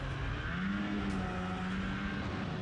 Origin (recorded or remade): recorded